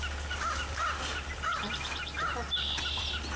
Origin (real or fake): real